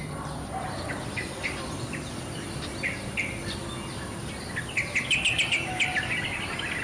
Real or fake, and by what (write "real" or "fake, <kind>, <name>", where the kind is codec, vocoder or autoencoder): real